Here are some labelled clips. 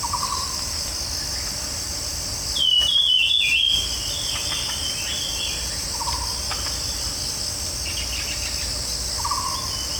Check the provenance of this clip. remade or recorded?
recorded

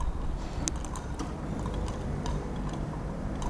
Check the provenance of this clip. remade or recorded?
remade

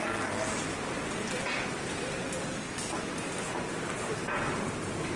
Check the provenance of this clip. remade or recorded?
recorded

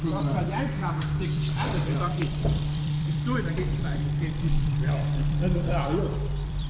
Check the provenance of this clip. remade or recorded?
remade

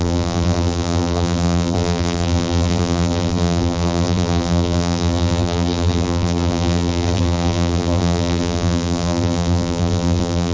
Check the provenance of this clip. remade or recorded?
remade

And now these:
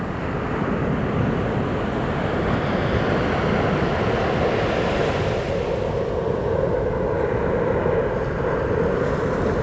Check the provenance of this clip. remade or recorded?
recorded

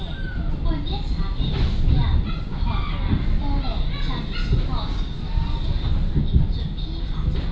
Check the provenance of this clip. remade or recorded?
recorded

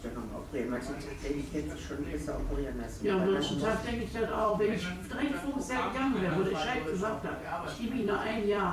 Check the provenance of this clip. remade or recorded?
remade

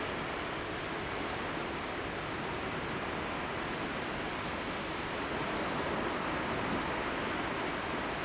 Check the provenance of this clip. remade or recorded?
recorded